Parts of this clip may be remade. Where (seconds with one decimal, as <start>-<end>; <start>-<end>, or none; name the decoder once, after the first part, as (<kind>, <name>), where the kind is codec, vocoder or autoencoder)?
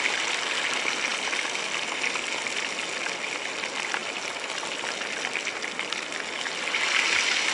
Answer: none